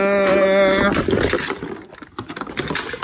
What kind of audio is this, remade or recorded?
recorded